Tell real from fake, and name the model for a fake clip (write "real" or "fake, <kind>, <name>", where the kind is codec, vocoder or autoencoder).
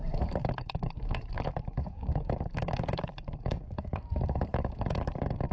fake, codec, DAC